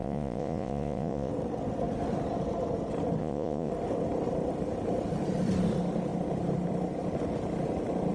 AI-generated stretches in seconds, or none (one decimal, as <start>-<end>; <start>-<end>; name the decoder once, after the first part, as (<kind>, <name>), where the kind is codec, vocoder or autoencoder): 0.0-1.3 (vocoder, Vocos); 3.2-3.7